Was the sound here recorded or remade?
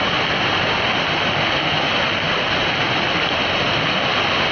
recorded